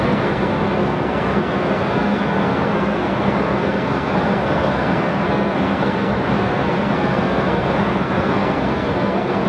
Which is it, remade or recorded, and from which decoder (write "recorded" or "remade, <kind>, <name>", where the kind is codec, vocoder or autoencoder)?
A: remade, codec, SNAC